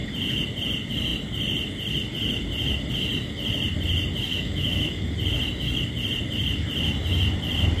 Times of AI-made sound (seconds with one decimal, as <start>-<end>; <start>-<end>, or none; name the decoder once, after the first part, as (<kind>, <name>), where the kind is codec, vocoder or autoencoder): 4.3-5.1 (autoencoder, DAC-VAE)